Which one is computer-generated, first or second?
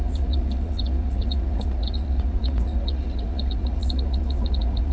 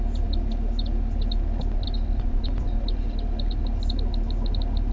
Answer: first